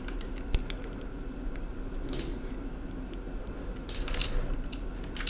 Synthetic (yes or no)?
no